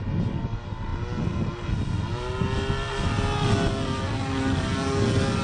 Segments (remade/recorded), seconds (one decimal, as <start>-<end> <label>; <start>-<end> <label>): 0.0-5.4 recorded